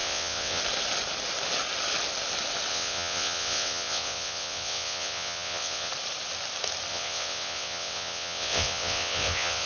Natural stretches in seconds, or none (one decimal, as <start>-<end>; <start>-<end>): 0.6-2.7; 5.9-6.9